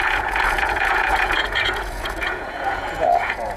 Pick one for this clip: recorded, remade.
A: remade